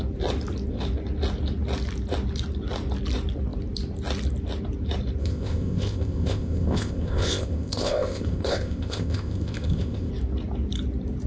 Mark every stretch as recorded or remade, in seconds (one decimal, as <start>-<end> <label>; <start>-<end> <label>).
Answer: 0.0-5.2 recorded; 5.2-10.1 remade; 10.1-11.3 recorded